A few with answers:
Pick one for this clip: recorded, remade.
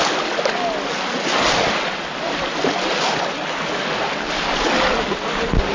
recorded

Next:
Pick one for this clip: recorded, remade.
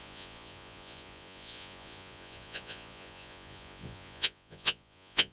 remade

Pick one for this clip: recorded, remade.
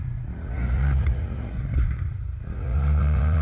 remade